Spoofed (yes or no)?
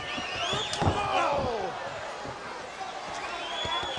no